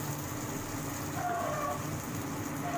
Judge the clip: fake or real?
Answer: real